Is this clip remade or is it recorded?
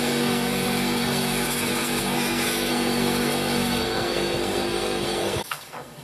remade